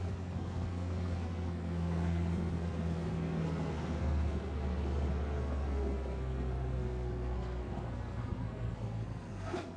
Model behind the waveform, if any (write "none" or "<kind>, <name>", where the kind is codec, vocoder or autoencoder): codec, SNAC